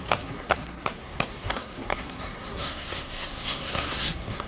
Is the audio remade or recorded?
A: remade